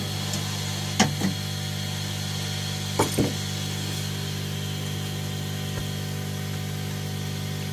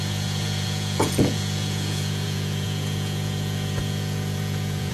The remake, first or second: second